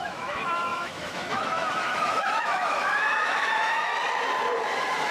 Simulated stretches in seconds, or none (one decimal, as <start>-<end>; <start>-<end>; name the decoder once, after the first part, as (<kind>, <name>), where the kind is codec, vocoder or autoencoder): 0.0-3.9 (autoencoder, DAC-VAE)